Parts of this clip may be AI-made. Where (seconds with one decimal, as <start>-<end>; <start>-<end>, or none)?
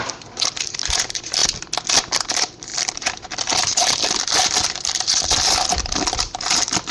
0.0-1.4; 2.3-6.9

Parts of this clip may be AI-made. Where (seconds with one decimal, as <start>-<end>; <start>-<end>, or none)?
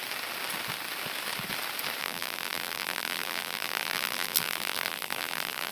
2.0-5.7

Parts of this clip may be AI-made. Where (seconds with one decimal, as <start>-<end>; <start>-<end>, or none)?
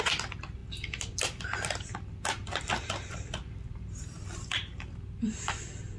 0.6-1.9; 2.4-6.0